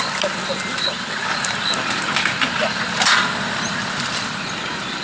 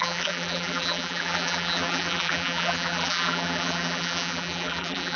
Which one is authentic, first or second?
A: first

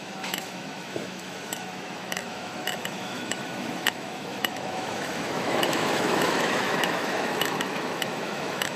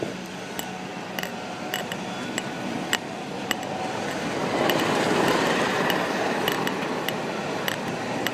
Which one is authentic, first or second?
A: second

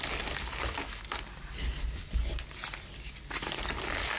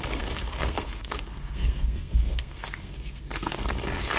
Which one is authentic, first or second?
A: first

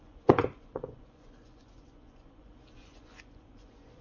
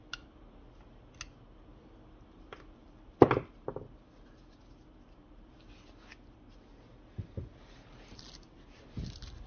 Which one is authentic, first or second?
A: second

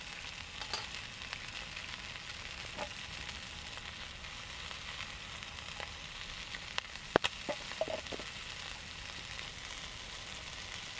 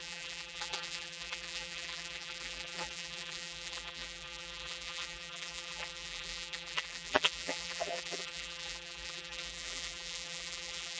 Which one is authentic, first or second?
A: first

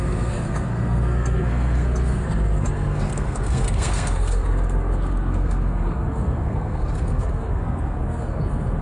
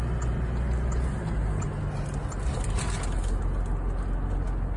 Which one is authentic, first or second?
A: second